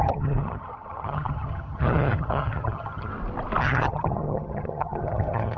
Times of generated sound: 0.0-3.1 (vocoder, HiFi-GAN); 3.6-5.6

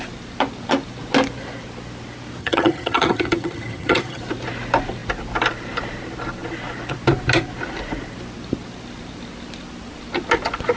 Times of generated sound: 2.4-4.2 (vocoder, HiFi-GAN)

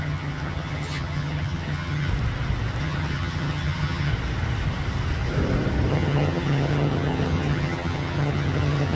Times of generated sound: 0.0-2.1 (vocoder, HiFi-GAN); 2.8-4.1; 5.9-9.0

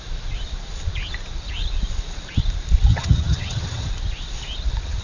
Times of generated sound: 2.9-3.9 (vocoder, HiFi-GAN)